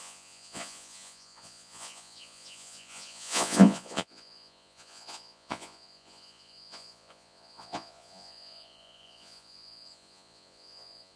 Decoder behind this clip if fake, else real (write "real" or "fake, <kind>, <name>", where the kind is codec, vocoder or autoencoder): fake, vocoder, Vocos